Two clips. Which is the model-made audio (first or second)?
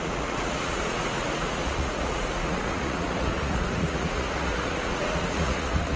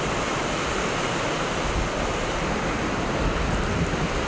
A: first